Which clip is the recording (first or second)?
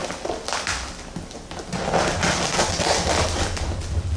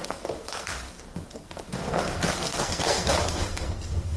first